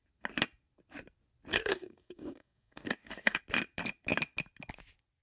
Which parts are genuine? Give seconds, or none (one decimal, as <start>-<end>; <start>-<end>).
0.0-1.5; 3.4-5.2